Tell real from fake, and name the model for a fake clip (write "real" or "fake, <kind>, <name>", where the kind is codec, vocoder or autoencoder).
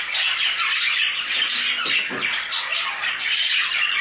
real